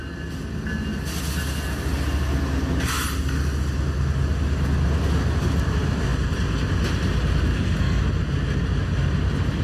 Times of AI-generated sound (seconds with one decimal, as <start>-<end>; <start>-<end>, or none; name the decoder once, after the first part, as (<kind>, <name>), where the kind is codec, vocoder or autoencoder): 7.5-8.0 (codec, SNAC)